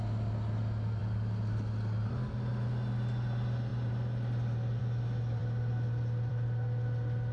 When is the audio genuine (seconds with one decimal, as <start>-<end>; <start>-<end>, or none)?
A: 0.0-7.3